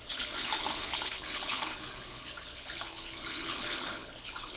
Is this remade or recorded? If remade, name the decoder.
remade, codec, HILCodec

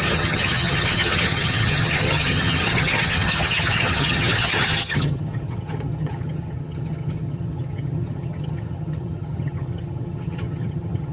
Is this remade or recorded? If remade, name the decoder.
remade, vocoder, HiFi-GAN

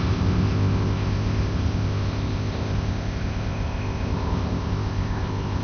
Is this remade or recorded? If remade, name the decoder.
remade, codec, ZipCodec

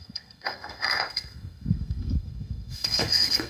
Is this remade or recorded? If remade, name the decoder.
remade, codec, SNAC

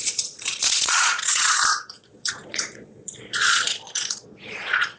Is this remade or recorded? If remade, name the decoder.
remade, vocoder, Vocos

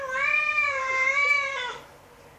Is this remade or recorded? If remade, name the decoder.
remade, vocoder, BigVGAN v2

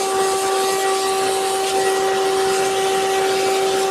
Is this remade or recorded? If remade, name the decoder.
recorded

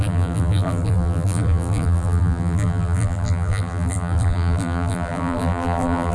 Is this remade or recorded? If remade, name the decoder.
remade, vocoder, BigVGAN v2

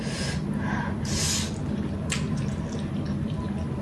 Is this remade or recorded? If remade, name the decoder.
recorded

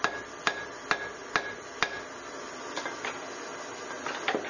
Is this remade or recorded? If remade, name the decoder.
recorded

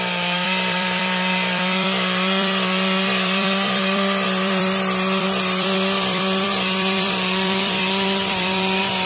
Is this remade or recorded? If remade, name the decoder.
remade, vocoder, BigVGAN v2